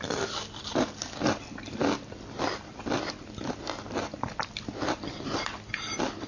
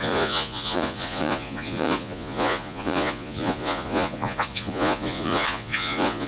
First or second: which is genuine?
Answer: first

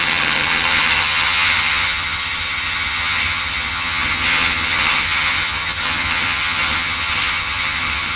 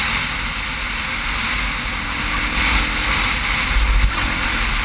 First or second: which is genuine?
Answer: second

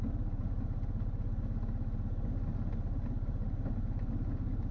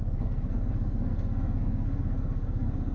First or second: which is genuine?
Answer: first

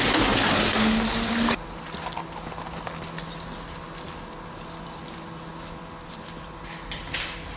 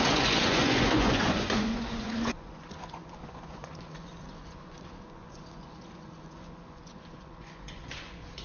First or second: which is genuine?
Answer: first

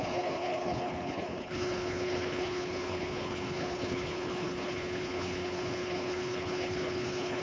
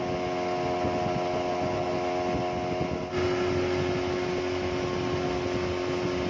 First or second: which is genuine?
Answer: second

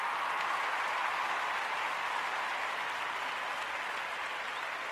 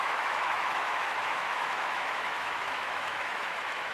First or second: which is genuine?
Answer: first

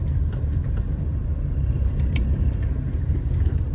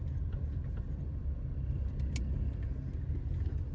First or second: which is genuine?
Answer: second